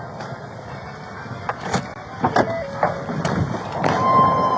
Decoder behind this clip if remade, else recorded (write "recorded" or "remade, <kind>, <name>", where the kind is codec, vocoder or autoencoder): recorded